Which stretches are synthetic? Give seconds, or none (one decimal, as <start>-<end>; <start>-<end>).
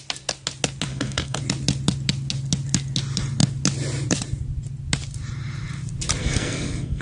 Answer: 0.9-1.4; 6.2-7.0